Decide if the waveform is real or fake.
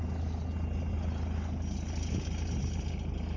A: real